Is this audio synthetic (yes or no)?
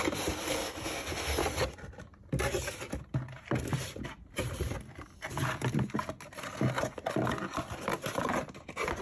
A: no